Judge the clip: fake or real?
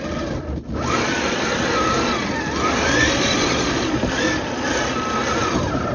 real